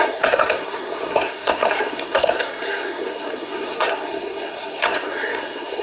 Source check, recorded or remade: remade